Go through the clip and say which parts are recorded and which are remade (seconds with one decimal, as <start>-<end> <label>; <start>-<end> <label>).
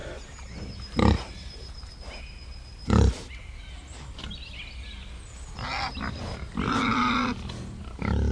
0.0-1.3 remade; 1.3-8.3 recorded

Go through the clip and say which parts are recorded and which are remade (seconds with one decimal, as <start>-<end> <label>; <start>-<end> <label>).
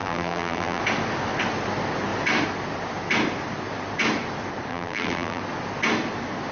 0.0-0.8 remade; 0.8-4.7 recorded; 4.7-5.4 remade; 5.4-6.5 recorded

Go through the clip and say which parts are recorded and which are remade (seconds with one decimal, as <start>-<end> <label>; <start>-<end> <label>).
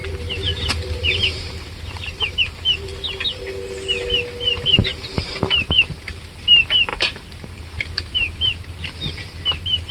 0.0-2.9 remade; 2.9-4.7 recorded; 4.7-9.9 remade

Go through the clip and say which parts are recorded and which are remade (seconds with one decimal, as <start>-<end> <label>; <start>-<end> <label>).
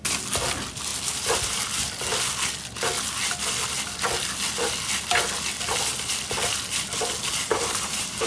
0.0-7.4 recorded; 7.4-8.3 remade